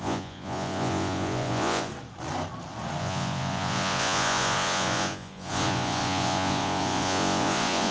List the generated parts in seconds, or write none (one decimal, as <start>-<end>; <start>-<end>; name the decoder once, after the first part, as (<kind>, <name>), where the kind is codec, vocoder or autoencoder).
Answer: 0.0-1.9 (vocoder, Vocos); 3.0-7.9